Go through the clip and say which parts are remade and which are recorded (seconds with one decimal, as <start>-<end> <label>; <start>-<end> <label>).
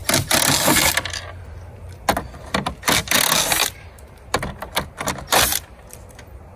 0.0-6.6 recorded